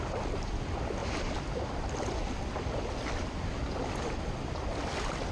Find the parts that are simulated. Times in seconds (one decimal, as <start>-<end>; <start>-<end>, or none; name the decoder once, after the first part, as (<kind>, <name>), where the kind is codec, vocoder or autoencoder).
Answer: none